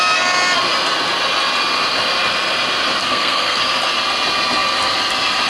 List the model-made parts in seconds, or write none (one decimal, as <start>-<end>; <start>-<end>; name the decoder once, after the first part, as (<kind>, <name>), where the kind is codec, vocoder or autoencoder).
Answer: 3.0-3.6 (codec, SNAC)